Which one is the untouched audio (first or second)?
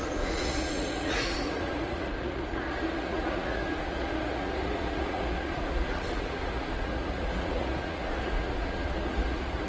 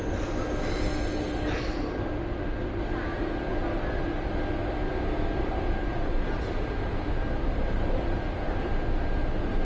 second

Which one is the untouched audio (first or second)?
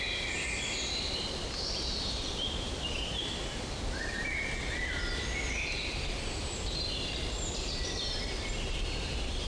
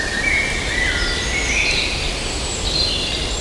second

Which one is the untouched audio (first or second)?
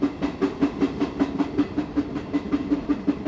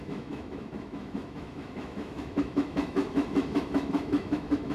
first